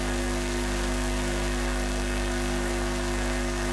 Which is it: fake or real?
fake